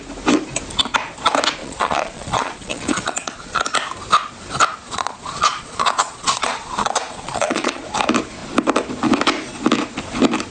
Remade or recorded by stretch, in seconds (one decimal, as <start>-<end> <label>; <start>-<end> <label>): 0.0-1.6 recorded; 1.6-3.6 remade; 3.6-4.8 recorded; 4.8-7.8 remade; 7.8-10.5 recorded